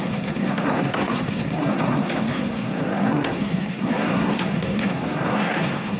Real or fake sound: fake